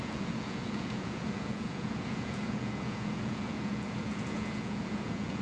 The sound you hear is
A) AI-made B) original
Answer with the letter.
A